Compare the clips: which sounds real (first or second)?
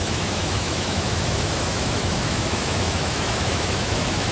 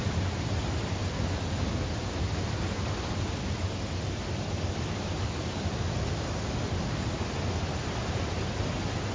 second